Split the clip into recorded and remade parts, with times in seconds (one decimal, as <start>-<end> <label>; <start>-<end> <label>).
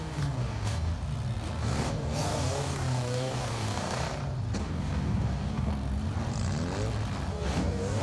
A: 0.0-0.9 remade; 0.9-1.6 recorded; 1.6-4.1 remade; 4.1-4.6 recorded; 4.6-5.7 remade; 5.7-7.3 recorded; 7.3-8.0 remade